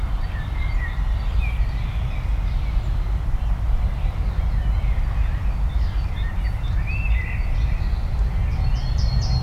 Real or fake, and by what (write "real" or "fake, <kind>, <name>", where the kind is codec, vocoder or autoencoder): real